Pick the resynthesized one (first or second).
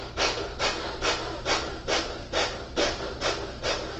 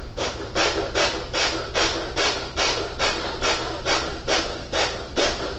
second